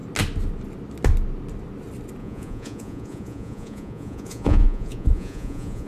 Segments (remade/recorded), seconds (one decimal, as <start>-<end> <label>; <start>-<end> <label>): 0.0-2.2 recorded; 2.2-5.9 remade

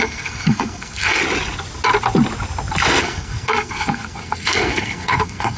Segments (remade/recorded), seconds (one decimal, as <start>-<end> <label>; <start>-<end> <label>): 0.0-1.2 remade; 1.2-3.0 recorded; 3.0-5.6 remade

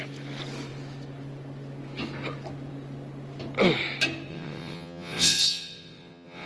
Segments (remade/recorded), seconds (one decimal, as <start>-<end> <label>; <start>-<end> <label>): 0.0-4.3 recorded; 4.3-6.5 remade

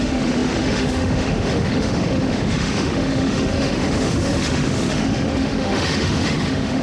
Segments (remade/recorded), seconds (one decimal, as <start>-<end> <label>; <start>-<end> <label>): 0.0-6.8 remade

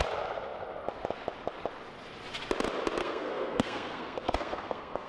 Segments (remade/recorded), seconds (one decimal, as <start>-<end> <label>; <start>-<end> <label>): 0.0-3.0 recorded; 3.0-5.1 remade

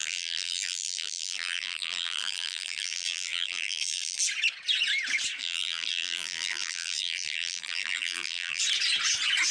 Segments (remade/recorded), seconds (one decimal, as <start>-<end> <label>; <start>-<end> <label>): 0.0-4.2 remade; 4.2-5.4 recorded; 5.4-8.6 remade; 8.6-9.5 recorded